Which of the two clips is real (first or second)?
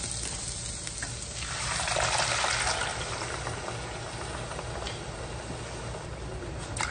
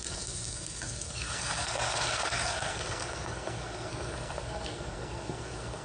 first